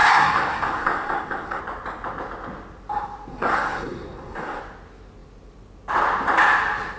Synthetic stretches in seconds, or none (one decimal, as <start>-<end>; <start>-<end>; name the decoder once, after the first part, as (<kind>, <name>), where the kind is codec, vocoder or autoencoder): 0.0-1.6 (codec, SNAC); 3.3-4.6